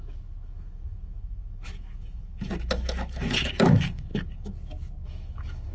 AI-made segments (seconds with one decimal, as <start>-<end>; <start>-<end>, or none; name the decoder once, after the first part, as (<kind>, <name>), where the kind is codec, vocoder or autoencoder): 0.0-5.7 (autoencoder, DAC-VAE)